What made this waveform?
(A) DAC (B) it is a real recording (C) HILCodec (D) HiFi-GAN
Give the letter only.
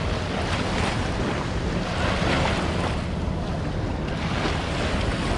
B